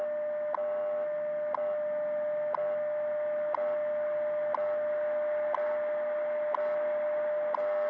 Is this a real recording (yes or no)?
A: yes